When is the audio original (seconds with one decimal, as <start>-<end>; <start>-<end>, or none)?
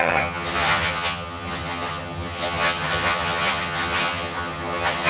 none